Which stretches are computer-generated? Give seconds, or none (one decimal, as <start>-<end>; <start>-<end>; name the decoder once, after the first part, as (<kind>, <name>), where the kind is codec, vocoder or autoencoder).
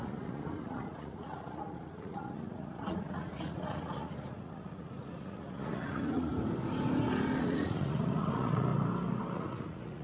0.0-6.3 (vocoder, Vocos); 7.4-8.7; 9.3-10.0